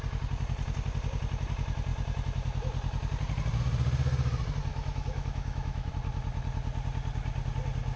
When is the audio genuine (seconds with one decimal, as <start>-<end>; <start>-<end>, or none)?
0.0-4.7; 5.9-8.0